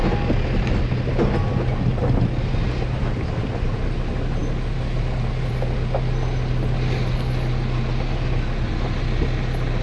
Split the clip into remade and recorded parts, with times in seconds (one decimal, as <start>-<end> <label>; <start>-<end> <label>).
0.0-9.8 recorded